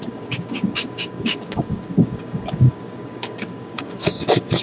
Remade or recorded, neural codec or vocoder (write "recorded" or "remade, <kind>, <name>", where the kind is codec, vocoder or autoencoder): remade, codec, DAC